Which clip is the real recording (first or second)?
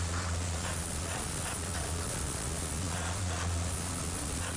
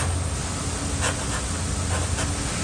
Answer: second